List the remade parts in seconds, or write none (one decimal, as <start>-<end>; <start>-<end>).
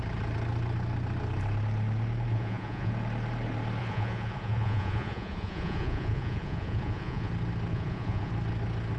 2.3-2.9; 3.8-7.3; 7.7-8.3